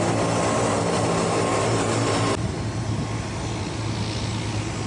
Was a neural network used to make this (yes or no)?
no